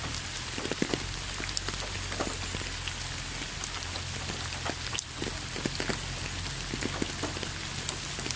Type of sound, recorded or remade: recorded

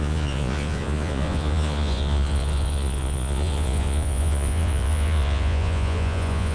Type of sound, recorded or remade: remade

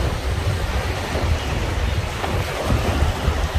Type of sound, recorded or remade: recorded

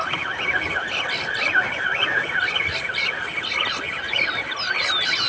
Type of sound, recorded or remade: recorded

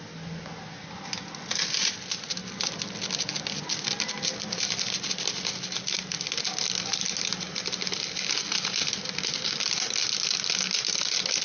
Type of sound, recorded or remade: recorded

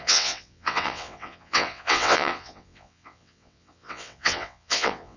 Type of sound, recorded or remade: remade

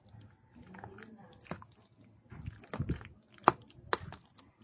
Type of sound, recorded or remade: recorded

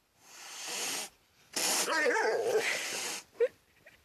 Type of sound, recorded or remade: recorded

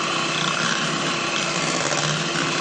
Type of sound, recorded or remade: recorded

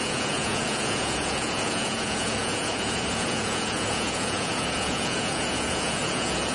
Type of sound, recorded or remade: remade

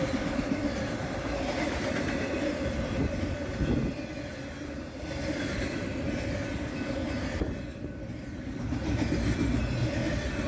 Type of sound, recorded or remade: recorded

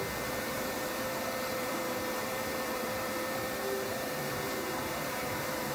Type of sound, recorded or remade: remade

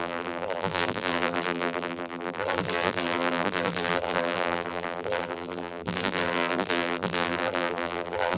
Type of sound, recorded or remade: remade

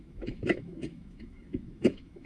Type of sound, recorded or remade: remade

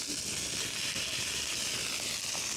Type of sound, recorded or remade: recorded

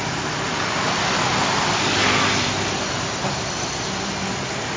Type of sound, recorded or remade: recorded